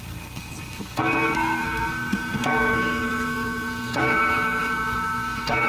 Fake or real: fake